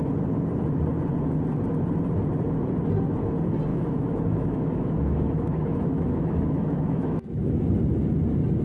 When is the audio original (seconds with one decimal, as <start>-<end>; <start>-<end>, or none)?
0.0-3.7; 7.6-8.6